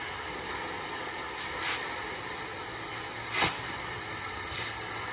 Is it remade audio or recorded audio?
recorded